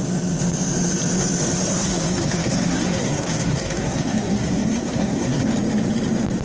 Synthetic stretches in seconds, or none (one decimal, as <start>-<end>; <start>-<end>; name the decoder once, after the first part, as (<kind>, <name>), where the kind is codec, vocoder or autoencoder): 1.7-5.5 (codec, SNAC)